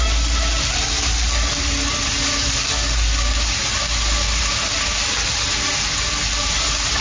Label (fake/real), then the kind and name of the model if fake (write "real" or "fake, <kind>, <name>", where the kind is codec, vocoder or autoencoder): real